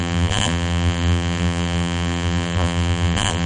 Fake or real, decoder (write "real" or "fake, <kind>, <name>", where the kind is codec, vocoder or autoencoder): fake, vocoder, BigVGAN v2